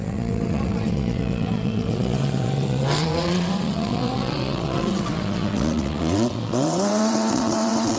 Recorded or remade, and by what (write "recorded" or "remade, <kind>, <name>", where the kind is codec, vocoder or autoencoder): remade, vocoder, WaveNeXt